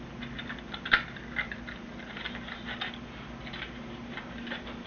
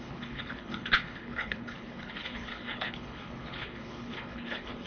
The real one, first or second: first